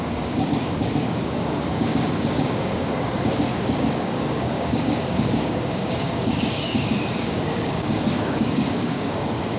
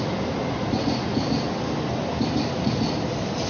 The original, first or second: second